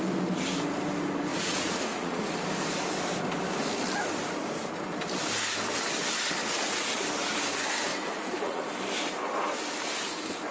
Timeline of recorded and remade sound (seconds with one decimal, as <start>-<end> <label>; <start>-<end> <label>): 0.0-1.3 recorded; 1.3-2.3 remade; 2.3-6.4 recorded; 6.4-7.0 remade; 7.0-7.9 recorded; 7.9-8.7 remade; 8.7-10.5 recorded